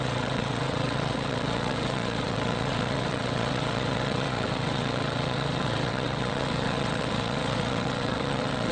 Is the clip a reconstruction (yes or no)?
yes